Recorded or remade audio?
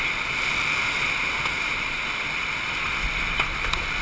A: recorded